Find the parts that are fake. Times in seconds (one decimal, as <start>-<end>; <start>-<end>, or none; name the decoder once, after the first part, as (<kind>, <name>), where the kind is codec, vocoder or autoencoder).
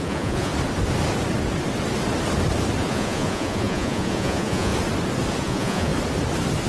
0.0-0.5 (vocoder, Vocos); 2.8-4.7; 5.4-5.9